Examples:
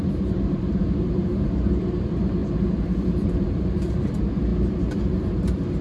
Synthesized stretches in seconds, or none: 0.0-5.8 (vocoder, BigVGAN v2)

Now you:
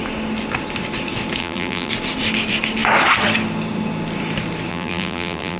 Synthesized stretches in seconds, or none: 1.4-1.9 (vocoder, BigVGAN v2); 4.7-5.6

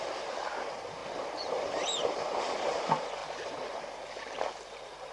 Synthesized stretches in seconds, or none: 0.0-1.0 (vocoder, BigVGAN v2); 1.7-3.2; 4.3-5.1

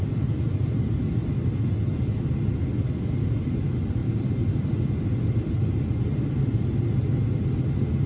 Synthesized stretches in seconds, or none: 4.0-4.7 (vocoder, BigVGAN v2)

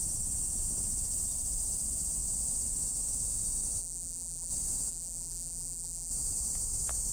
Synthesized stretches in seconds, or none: 3.8-4.5 (vocoder, BigVGAN v2); 4.9-6.1

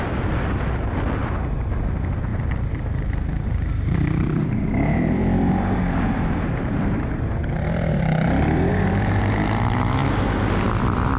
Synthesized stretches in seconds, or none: 2.3-7.5 (vocoder, BigVGAN v2); 8.7-9.2

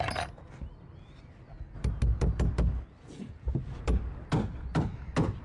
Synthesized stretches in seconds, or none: 2.1-4.8 (vocoder, BigVGAN v2)

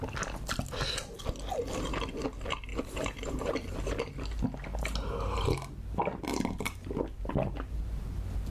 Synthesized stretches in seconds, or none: 2.7-3.8 (vocoder, BigVGAN v2)